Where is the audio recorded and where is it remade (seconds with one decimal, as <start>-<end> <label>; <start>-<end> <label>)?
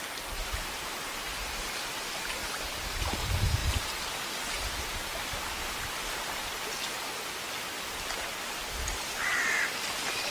0.0-0.4 recorded; 0.4-1.4 remade; 1.4-10.3 recorded